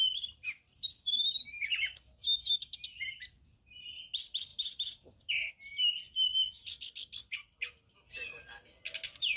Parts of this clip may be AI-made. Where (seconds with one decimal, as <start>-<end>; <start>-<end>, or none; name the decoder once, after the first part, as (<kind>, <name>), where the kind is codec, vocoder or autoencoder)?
none